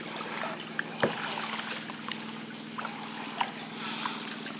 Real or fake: real